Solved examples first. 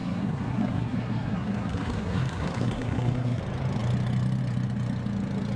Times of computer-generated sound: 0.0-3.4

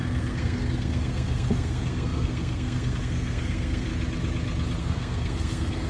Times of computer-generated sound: 0.0-3.9; 4.8-5.9